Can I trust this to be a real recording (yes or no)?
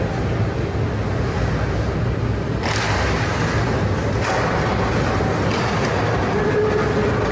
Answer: yes